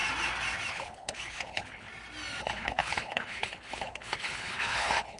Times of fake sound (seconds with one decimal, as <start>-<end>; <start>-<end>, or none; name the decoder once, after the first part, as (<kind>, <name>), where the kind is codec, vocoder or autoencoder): 0.7-1.9 (codec, HILCodec); 2.4-5.2